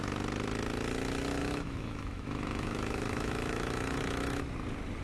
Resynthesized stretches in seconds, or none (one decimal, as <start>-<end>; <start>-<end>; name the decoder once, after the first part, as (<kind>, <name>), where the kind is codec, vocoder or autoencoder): 1.4-4.4 (autoencoder, DAC-VAE)

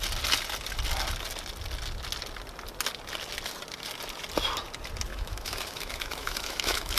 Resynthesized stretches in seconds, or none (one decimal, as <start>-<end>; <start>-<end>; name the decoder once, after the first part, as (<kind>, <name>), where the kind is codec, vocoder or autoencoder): 5.1-7.0 (autoencoder, DAC-VAE)

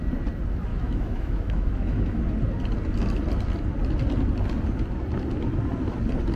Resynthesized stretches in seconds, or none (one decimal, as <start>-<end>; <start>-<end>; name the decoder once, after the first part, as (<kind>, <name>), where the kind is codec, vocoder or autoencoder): 0.7-2.2 (autoencoder, DAC-VAE)

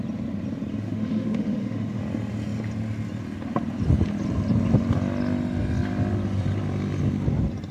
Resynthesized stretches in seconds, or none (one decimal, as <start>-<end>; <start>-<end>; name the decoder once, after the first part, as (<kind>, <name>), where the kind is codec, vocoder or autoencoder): 0.7-2.0 (autoencoder, DAC-VAE)